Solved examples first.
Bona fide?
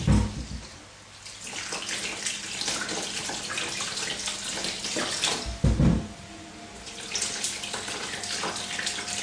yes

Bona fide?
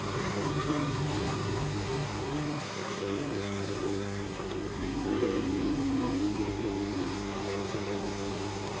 no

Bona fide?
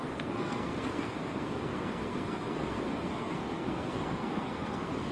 no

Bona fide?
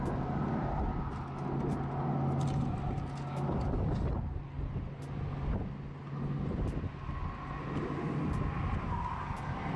yes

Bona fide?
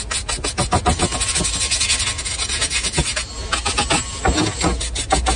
yes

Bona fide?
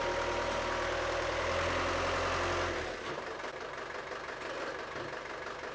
yes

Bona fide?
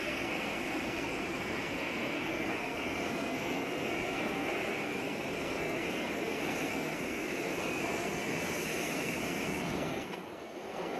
no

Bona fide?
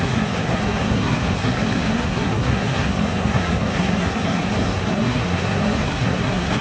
no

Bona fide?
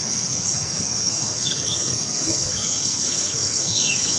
no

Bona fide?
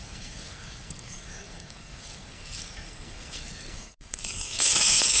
no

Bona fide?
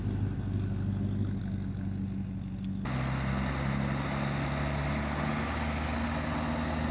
yes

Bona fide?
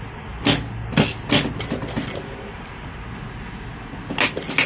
yes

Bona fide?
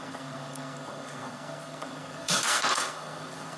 no